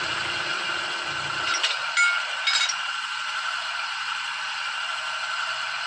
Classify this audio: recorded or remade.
recorded